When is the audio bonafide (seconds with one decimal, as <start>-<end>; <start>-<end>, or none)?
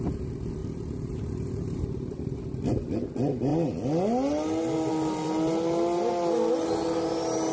0.0-0.6; 2.4-7.5